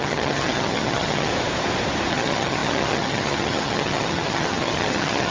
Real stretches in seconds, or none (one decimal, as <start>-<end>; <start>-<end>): 1.3-2.1